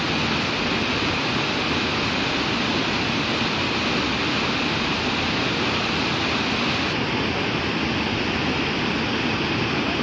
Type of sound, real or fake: real